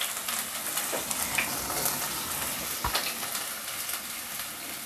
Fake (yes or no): no